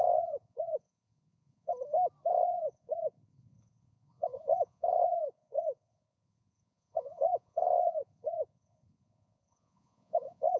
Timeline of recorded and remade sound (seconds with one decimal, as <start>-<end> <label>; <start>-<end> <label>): 0.0-1.7 remade; 1.7-2.3 recorded; 2.3-10.6 remade